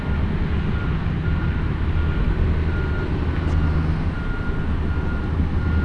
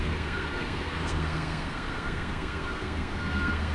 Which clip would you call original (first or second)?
first